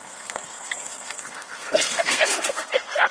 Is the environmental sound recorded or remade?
remade